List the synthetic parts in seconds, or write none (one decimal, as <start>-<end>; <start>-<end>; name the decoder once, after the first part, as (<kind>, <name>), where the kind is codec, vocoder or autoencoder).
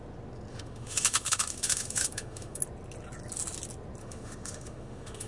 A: 0.5-2.6 (autoencoder, DAC-VAE); 4.0-5.3